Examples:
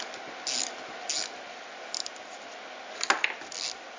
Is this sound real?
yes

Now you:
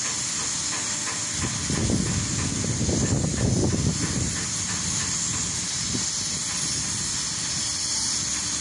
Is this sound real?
yes